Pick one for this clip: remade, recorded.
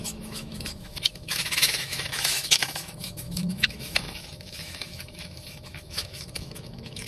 remade